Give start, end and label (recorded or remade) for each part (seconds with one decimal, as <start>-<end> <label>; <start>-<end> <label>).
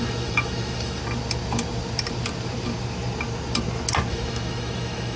0.0-1.0 remade; 1.0-4.1 recorded; 4.1-5.2 remade